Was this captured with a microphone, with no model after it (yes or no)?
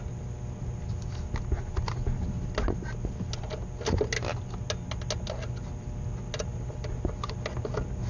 yes